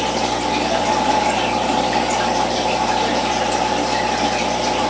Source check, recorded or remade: recorded